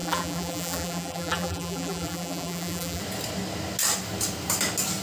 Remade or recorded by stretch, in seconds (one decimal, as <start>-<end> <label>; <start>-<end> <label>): 0.0-3.0 remade; 3.0-5.0 recorded